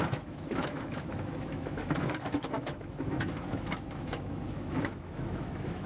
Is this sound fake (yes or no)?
yes